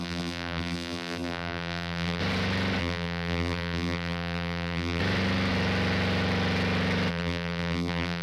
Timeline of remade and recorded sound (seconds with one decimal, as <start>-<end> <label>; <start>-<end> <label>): 0.0-2.2 remade; 2.2-2.8 recorded; 2.8-5.0 remade; 5.0-7.1 recorded; 7.1-8.2 remade